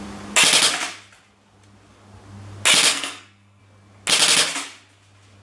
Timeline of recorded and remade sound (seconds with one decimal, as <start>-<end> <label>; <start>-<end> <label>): 0.0-2.9 recorded; 2.9-3.6 remade; 3.6-5.4 recorded